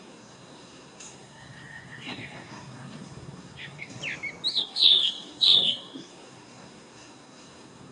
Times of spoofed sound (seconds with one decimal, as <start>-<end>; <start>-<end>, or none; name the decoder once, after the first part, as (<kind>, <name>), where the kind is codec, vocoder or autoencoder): 0.0-4.0 (codec, SNAC); 4.5-7.9